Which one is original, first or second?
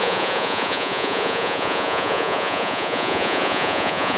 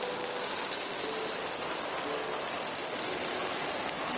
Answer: second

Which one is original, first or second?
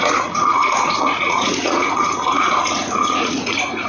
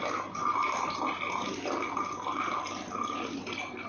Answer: second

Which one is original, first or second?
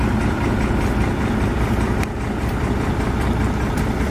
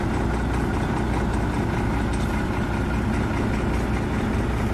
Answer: second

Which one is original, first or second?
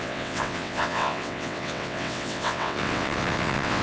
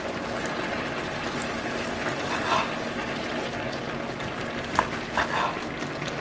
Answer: second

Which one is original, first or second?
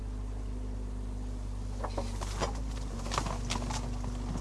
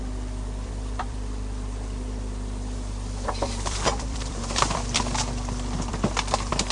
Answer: first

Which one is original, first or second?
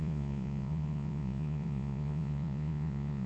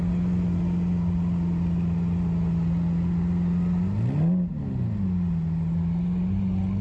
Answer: second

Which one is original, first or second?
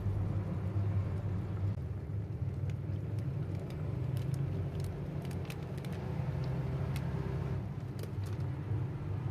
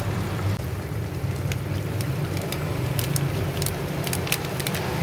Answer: first